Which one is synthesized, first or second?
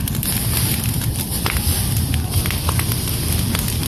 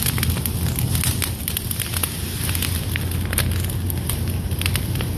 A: first